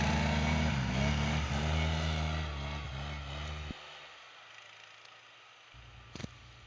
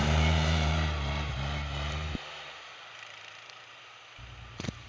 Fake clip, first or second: second